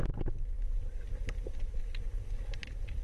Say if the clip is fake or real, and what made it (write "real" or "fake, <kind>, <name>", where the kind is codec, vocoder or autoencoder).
real